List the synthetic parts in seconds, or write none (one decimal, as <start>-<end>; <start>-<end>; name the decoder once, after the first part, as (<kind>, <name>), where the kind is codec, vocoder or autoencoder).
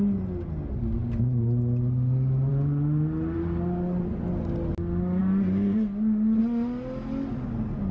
none